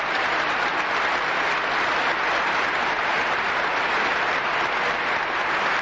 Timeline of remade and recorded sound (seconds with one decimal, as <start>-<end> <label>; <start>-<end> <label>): 0.0-5.8 recorded